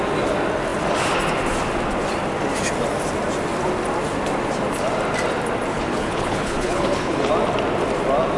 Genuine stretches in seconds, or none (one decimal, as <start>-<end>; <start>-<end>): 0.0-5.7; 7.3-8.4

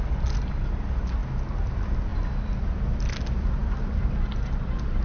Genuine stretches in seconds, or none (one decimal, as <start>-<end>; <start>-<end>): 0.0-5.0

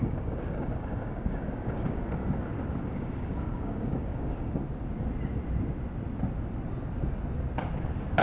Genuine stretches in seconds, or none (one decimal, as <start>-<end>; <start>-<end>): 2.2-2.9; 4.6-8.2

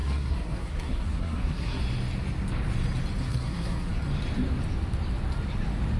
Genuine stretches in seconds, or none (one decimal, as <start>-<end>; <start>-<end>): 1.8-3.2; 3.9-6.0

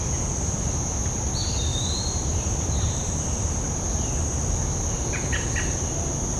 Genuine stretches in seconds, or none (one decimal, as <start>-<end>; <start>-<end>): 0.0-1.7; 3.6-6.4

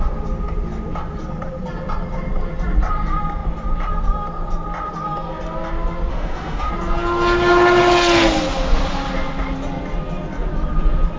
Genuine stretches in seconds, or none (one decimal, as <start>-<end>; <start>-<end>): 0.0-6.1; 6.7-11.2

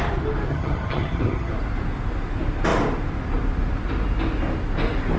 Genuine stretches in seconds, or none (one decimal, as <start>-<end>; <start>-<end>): 0.0-0.5; 1.5-5.2

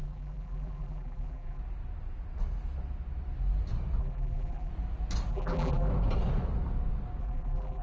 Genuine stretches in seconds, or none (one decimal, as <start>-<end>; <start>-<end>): 1.6-4.0; 4.7-5.3; 5.9-7.2